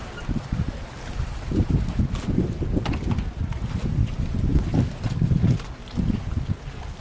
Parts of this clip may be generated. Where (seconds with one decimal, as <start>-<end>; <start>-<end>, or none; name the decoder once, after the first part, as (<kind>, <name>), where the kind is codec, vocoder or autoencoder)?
none